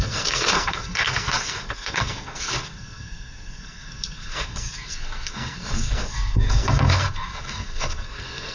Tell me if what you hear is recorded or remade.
remade